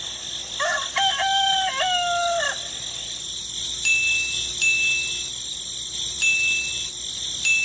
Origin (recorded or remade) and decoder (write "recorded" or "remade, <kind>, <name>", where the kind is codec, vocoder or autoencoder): recorded